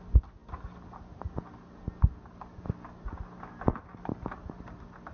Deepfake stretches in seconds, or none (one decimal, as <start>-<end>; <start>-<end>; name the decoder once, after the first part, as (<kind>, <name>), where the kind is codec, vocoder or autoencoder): none